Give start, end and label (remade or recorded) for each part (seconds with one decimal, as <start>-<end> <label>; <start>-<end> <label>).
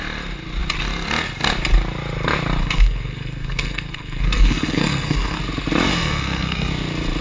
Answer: 0.0-2.6 recorded; 2.6-5.4 remade; 5.4-5.9 recorded; 5.9-6.7 remade; 6.7-7.2 recorded